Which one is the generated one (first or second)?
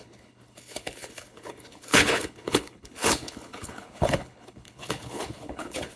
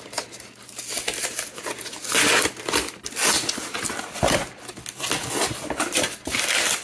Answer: first